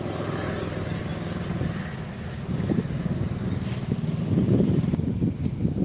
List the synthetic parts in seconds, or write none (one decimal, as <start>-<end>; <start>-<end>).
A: none